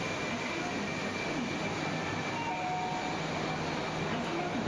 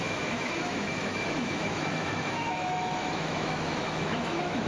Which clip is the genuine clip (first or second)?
first